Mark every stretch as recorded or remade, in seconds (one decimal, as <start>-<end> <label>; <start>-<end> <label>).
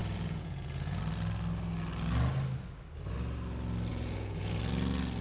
0.0-1.0 remade; 1.0-3.9 recorded; 3.9-4.6 remade; 4.6-5.2 recorded